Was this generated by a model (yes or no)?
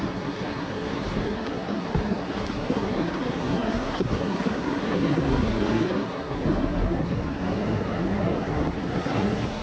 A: yes